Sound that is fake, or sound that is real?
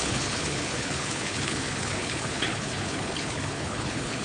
fake